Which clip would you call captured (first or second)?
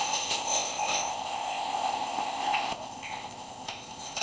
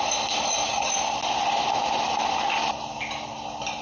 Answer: second